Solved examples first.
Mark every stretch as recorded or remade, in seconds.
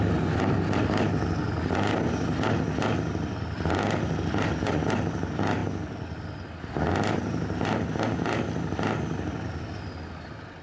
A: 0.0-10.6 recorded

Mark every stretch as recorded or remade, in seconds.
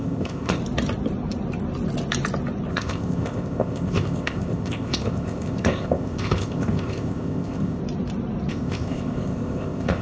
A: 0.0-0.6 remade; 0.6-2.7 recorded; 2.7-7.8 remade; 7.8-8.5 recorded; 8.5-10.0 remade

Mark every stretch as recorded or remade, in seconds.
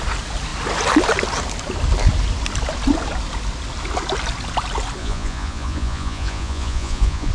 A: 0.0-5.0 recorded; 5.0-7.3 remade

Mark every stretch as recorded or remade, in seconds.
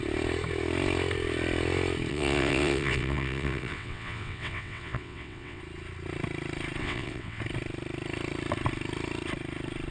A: 0.0-2.1 recorded; 2.1-5.6 remade; 5.6-6.8 recorded; 6.8-7.4 remade; 7.4-9.9 recorded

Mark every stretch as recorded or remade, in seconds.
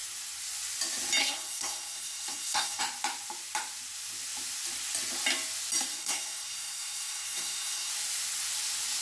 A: 0.0-1.2 recorded; 1.2-2.8 remade; 2.8-5.9 recorded; 5.9-7.9 remade; 7.9-9.0 recorded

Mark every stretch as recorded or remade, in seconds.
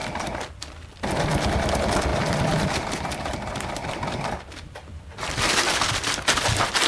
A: 0.0-0.5 remade; 0.5-2.1 recorded; 2.1-5.9 remade; 5.9-6.9 recorded